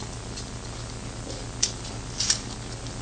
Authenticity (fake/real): real